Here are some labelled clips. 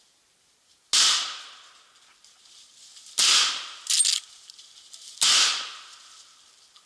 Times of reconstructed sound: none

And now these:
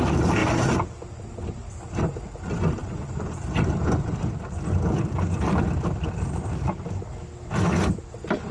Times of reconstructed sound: 2.8-3.4 (vocoder, Vocos)

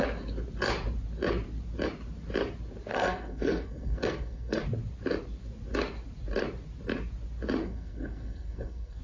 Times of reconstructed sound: 2.9-4.6 (codec, SNAC); 7.6-9.0

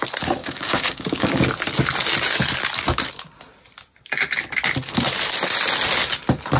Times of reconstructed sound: 0.4-1.4 (codec, DAC)

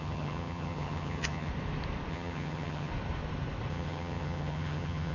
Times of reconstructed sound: 0.0-1.5 (vocoder, HiFi-GAN); 2.1-2.9; 3.7-5.1

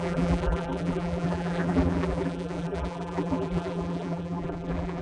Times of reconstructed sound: 0.0-5.0 (vocoder, BigVGAN v2)

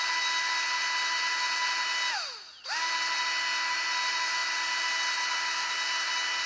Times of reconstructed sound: none